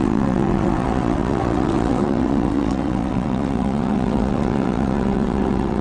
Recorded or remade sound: remade